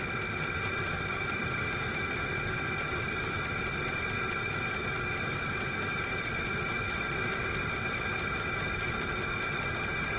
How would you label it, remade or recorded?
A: recorded